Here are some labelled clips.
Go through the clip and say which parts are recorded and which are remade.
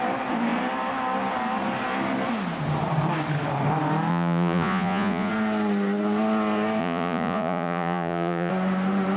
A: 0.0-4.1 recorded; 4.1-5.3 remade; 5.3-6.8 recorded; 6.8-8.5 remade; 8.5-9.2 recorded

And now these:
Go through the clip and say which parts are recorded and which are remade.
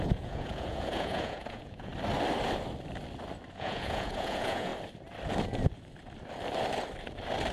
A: 0.0-1.9 remade; 1.9-3.5 recorded; 3.5-4.7 remade; 4.7-7.5 recorded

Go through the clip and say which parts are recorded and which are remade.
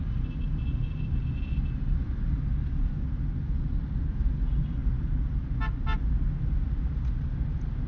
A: 0.0-7.9 recorded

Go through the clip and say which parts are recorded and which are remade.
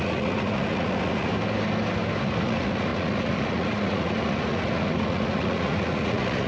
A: 0.0-1.3 remade; 1.3-2.2 recorded; 2.2-6.5 remade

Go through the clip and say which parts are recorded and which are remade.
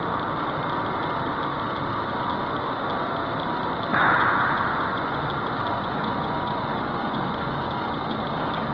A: 0.0-3.9 recorded; 3.9-5.2 remade; 5.2-5.7 recorded; 5.7-8.2 remade; 8.2-8.7 recorded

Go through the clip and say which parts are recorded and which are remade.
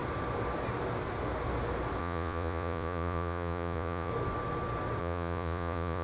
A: 0.0-2.0 recorded; 2.0-4.1 remade; 4.1-5.0 recorded; 5.0-6.0 remade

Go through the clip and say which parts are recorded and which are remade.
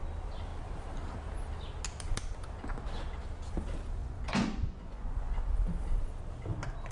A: 0.0-4.0 recorded; 4.0-5.4 remade; 5.4-6.9 recorded